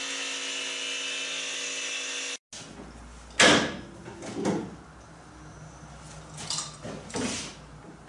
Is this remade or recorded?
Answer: recorded